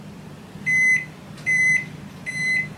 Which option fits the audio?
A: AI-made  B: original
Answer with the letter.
A